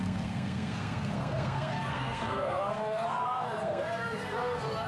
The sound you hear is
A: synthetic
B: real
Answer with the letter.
A